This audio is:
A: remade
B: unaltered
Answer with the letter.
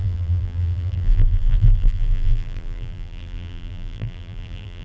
A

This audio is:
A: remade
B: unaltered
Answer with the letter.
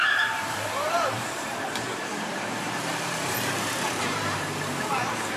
A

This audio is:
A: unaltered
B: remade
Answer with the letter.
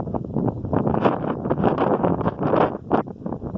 A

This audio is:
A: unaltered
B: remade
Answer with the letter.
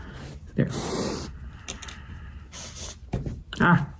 B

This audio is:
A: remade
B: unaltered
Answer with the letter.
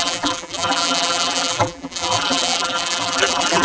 A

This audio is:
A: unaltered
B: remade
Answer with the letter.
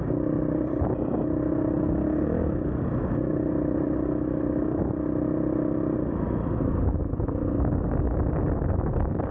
A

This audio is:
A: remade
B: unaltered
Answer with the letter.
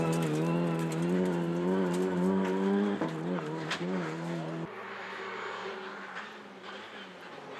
B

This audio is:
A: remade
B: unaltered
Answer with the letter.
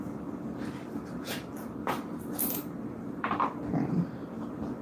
A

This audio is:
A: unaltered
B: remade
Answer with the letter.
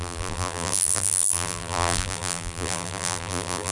B